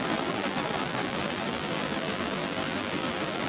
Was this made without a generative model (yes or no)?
no